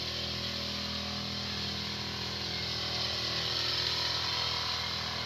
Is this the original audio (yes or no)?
yes